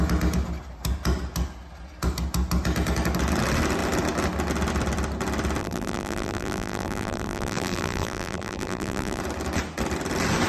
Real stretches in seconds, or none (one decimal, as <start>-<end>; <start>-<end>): 0.0-5.6; 9.2-10.5